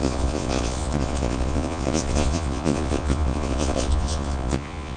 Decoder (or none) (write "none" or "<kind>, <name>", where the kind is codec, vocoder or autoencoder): vocoder, Vocos